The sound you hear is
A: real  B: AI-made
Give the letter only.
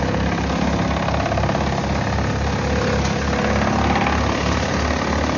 A